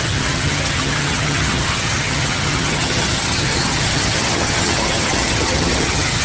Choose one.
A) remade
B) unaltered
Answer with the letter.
A